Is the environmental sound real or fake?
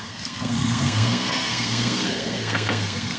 fake